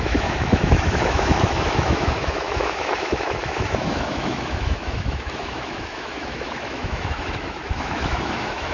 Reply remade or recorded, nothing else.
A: remade